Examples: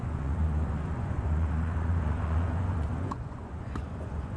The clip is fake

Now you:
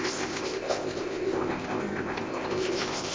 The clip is fake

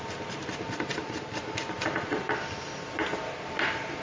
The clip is real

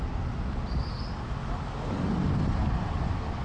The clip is real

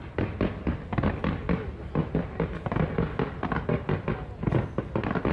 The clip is real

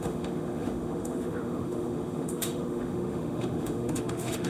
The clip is fake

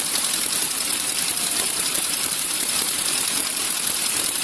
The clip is fake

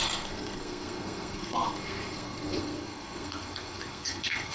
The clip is fake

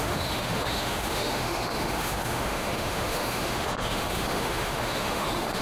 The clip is fake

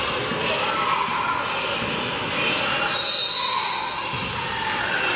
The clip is real